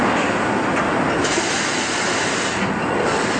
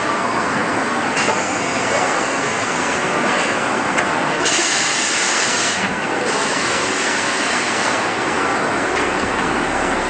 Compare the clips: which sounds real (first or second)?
first